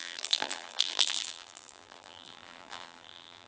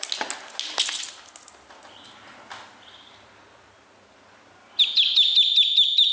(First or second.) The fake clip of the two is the first